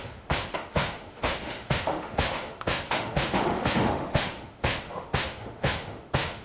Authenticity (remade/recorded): remade